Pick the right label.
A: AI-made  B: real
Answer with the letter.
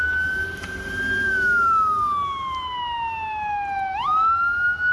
B